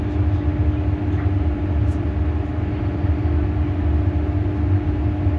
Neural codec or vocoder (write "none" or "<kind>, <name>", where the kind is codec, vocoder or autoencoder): none